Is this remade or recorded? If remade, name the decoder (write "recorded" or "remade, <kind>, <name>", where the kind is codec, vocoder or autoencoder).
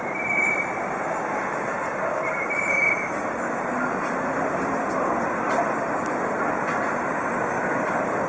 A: recorded